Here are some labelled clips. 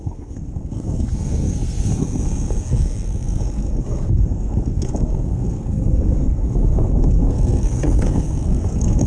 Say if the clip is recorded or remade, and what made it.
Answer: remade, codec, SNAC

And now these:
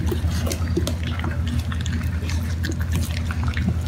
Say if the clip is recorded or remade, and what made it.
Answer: recorded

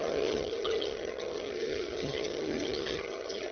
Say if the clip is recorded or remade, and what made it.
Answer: remade, vocoder, HiFi-GAN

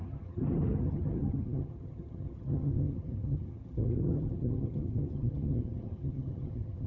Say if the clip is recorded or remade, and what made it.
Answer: remade, vocoder, HiFi-GAN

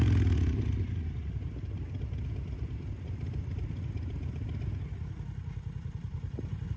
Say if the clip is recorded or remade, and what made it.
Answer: recorded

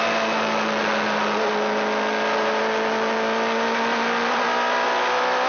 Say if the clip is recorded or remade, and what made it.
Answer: recorded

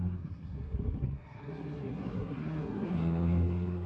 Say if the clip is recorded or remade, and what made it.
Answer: remade, codec, SNAC